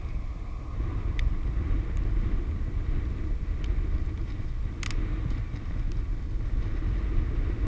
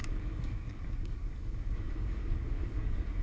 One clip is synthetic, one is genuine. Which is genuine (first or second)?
first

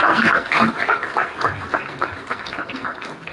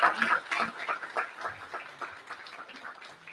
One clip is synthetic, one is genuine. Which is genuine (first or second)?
second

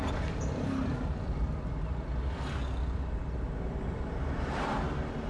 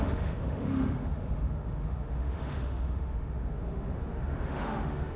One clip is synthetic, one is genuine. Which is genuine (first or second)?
first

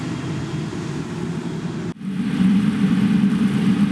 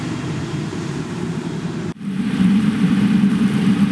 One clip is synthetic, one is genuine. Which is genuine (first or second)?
first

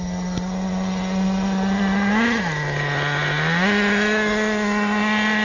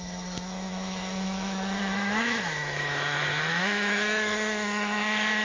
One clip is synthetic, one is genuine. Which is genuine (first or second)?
first